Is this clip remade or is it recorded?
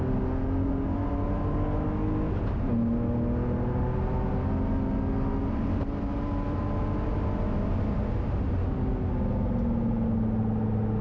recorded